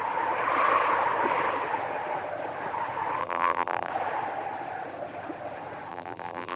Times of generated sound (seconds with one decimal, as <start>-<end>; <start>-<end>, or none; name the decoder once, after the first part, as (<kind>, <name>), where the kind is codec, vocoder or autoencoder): 3.2-3.9 (vocoder, BigVGAN v2); 5.9-6.6

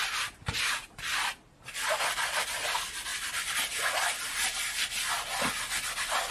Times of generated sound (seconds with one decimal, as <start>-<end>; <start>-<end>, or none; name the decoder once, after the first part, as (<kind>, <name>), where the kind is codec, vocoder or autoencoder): none

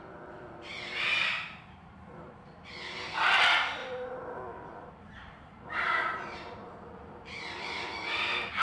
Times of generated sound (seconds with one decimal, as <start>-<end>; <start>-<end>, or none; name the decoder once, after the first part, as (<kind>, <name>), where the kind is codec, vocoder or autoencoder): 0.7-2.7 (vocoder, BigVGAN v2); 3.8-8.6